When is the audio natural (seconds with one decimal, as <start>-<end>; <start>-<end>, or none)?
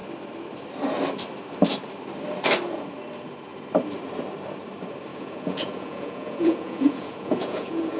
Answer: 0.0-5.1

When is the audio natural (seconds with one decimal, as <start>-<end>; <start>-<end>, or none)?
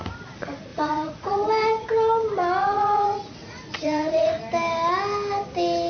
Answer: 0.0-0.7; 1.5-2.6; 4.4-5.9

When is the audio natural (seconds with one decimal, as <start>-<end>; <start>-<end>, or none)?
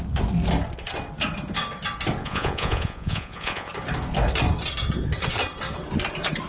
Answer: 0.0-2.2; 3.7-6.5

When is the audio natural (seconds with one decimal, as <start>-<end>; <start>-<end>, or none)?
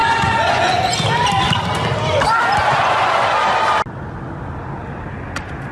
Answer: 0.9-2.6; 3.4-5.7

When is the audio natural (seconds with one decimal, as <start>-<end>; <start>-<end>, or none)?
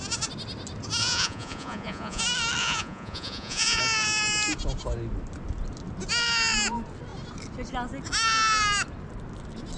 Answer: 0.0-1.0; 2.2-2.6; 3.8-9.8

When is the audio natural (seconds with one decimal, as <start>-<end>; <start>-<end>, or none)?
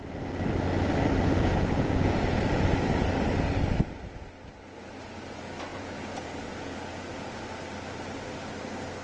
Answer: 0.0-1.4; 2.4-5.7; 7.3-9.0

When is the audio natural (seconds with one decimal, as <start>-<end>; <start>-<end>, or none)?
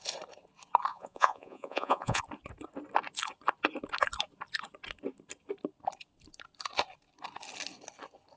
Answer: 0.0-0.9; 2.2-8.4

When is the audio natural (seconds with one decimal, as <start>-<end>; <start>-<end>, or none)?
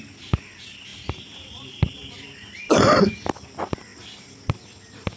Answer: 0.0-5.2